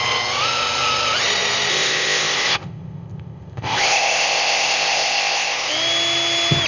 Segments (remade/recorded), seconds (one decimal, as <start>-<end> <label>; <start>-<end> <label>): 0.0-1.7 recorded; 1.7-5.7 remade; 5.7-6.7 recorded